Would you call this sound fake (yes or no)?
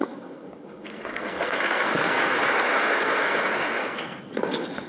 yes